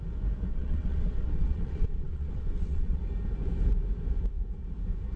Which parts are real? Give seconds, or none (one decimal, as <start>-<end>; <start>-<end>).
0.0-0.5; 3.0-5.2